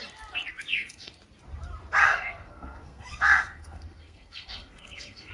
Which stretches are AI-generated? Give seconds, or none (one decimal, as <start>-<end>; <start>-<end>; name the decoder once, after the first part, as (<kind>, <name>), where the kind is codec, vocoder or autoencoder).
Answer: 0.6-1.1 (codec, SNAC); 2.0-5.3